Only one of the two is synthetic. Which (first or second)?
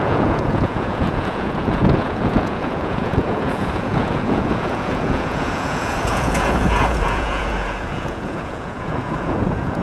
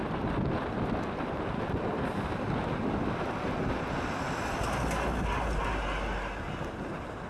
first